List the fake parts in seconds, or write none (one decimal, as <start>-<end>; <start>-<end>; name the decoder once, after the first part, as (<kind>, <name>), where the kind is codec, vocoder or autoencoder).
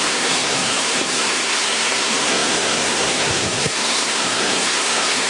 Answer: 0.0-5.3 (codec, SNAC)